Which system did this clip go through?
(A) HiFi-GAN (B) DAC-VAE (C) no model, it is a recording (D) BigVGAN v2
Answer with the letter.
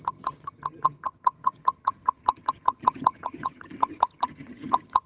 A